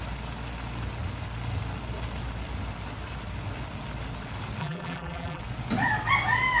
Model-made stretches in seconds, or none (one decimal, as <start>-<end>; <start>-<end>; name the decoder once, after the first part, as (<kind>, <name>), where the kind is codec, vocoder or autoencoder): 4.6-5.4 (vocoder, BigVGAN v2)